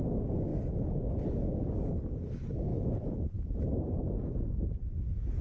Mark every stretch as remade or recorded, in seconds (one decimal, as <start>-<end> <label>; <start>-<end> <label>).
0.0-2.7 recorded; 2.7-4.1 remade; 4.1-5.4 recorded